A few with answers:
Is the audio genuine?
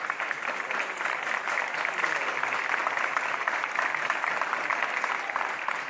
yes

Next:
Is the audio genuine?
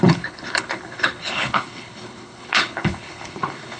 no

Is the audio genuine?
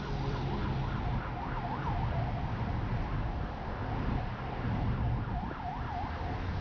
yes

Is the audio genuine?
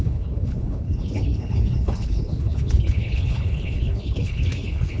no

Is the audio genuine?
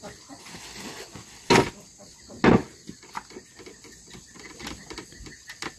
yes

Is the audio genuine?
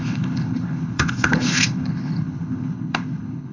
no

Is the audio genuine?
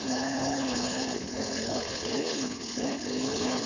no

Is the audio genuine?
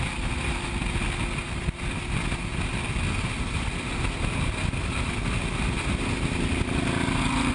yes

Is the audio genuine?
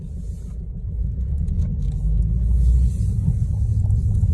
yes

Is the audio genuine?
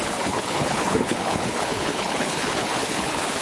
no